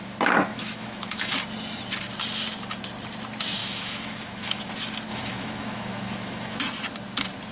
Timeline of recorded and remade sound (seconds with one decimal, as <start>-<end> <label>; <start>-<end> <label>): 0.0-0.5 recorded; 0.5-1.3 remade; 1.3-3.6 recorded; 3.6-4.6 remade; 4.6-5.1 recorded; 5.1-6.6 remade; 6.6-7.5 recorded